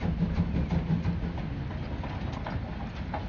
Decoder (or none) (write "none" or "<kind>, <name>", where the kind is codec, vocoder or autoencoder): none